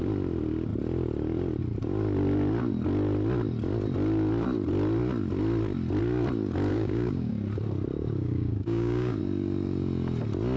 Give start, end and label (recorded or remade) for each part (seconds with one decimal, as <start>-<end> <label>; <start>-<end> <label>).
0.0-6.7 recorded; 6.7-7.3 remade; 7.3-8.0 recorded; 8.0-9.2 remade; 9.2-10.6 recorded